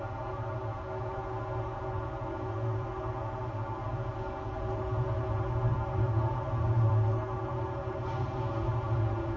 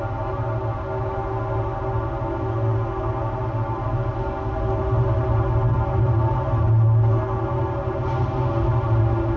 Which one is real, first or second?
second